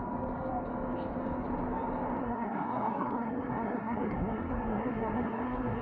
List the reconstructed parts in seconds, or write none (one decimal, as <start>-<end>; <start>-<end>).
2.2-5.8